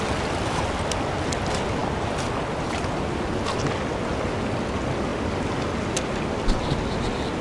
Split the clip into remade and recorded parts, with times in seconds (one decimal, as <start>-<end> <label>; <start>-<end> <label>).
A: 0.0-7.4 recorded